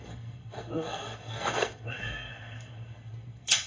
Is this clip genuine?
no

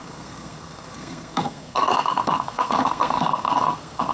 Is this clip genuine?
no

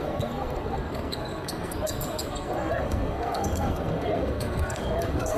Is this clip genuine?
no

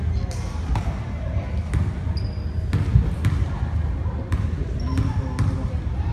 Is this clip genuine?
yes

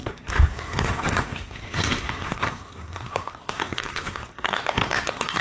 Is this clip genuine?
no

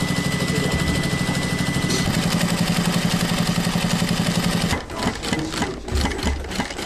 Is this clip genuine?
yes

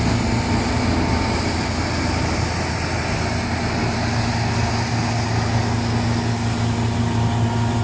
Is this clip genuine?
yes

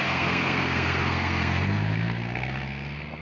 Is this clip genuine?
no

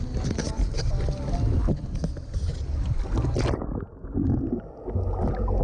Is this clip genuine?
yes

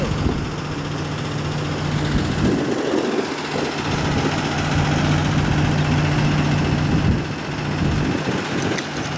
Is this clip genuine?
yes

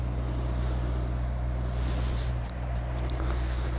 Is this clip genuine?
yes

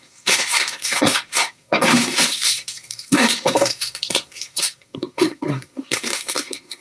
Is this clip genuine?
no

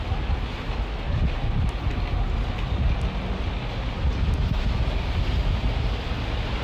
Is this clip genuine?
yes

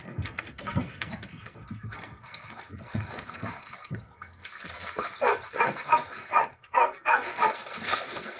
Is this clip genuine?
no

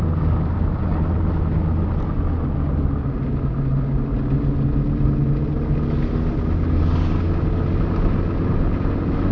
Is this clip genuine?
yes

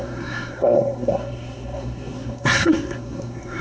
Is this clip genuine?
no